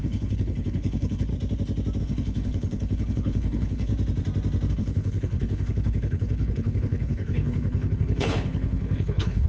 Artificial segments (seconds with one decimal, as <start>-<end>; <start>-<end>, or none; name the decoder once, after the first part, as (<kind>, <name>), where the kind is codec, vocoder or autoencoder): 0.0-1.3 (codec, HILCodec); 2.0-3.9; 4.7-9.5